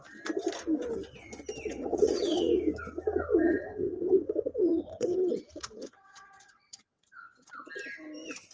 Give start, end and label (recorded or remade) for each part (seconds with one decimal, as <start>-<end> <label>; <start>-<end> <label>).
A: 0.0-1.7 recorded; 1.7-2.6 remade; 2.6-3.3 recorded; 3.3-7.5 remade; 7.5-8.5 recorded